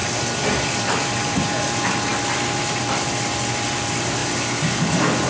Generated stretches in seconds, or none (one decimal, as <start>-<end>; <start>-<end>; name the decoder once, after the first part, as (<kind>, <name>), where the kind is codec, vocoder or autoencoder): 0.0-2.1 (vocoder, BigVGAN v2); 2.6-4.2; 4.7-5.3